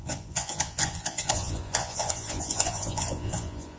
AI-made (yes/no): yes